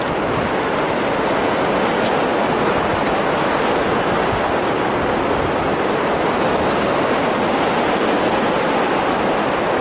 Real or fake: real